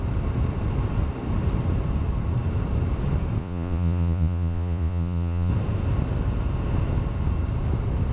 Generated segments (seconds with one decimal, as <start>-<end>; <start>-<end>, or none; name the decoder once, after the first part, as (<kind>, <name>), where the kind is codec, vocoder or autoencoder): 3.4-5.5 (vocoder, Vocos)